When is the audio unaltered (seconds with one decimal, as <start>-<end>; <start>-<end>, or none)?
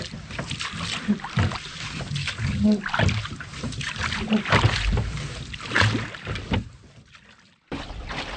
0.0-2.2; 2.8-8.4